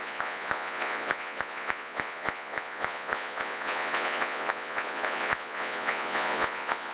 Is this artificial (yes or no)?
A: yes